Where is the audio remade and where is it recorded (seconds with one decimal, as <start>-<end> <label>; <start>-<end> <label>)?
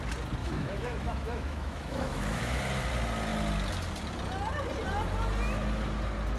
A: 0.0-0.4 recorded; 0.4-2.6 remade; 2.6-6.4 recorded